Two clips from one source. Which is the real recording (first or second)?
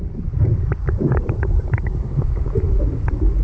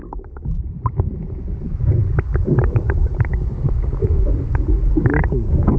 second